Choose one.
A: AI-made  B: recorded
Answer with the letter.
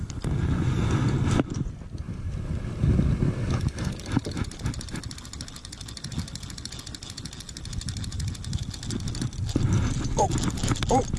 B